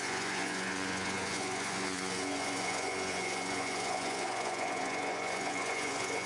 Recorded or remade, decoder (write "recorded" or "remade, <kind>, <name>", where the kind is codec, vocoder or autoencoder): remade, vocoder, Vocos